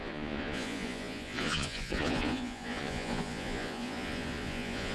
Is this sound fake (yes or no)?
yes